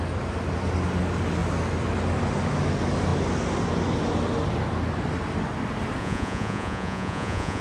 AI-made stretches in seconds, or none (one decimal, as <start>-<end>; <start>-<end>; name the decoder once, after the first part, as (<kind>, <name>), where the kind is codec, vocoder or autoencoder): 6.0-7.6 (vocoder, Vocos)